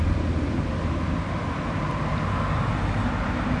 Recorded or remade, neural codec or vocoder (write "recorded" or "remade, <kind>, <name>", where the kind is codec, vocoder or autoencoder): recorded